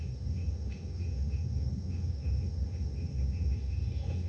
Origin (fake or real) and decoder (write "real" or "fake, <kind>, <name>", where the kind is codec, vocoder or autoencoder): fake, autoencoder, DAC-VAE